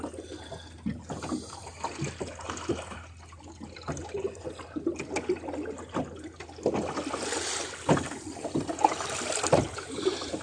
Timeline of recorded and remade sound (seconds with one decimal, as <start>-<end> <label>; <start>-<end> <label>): 0.0-10.4 recorded